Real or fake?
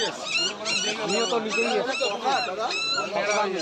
real